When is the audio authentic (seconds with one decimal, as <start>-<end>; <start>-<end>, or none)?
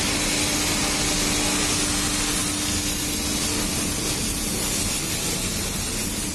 0.0-6.3